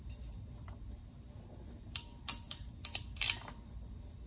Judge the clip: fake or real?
fake